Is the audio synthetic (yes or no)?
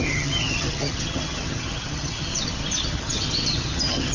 yes